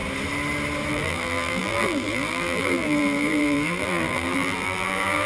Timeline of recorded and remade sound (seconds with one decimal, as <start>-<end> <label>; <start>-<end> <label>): 0.0-0.9 recorded; 0.9-5.3 remade